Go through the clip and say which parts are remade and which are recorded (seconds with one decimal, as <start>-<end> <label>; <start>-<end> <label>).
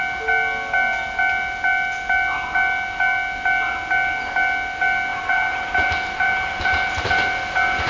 0.0-5.1 recorded; 5.1-7.9 remade